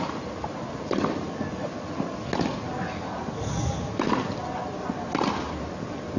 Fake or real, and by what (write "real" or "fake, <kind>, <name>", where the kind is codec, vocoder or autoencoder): real